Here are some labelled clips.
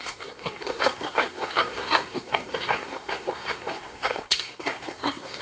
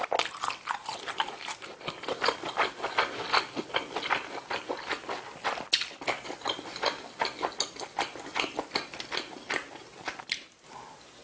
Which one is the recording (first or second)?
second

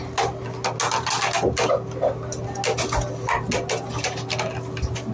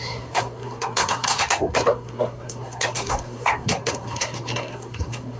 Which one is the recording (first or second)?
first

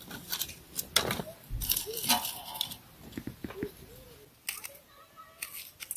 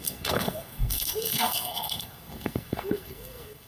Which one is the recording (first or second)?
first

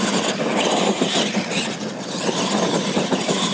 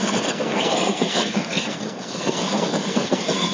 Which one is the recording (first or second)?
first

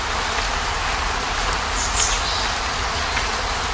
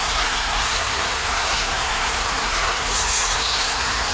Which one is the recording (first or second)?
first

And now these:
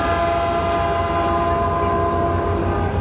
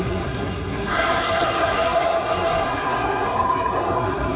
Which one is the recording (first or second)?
first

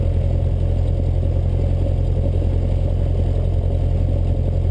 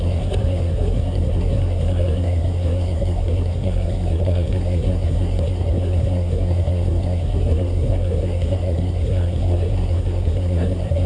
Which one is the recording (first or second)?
first